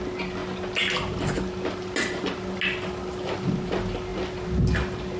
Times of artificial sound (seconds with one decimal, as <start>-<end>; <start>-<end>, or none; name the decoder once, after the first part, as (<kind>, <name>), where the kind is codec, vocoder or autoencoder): none